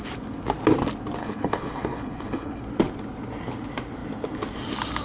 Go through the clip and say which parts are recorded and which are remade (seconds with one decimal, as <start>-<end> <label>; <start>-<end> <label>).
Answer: 0.0-1.2 recorded; 1.2-2.6 remade; 2.6-5.0 recorded